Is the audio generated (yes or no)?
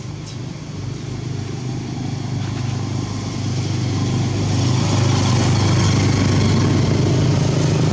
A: no